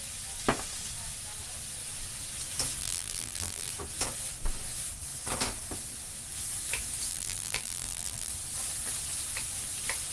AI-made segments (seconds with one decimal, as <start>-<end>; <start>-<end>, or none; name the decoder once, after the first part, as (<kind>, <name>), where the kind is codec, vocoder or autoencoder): 2.8-3.7 (vocoder, BigVGAN v2); 7.1-8.3